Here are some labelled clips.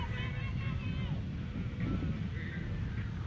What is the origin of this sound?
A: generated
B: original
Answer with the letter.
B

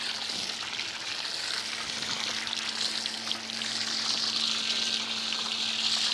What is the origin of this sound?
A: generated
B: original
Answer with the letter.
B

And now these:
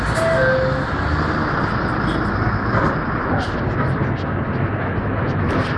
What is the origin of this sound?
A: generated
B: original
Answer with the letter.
B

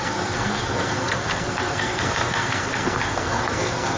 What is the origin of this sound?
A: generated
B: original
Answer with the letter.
A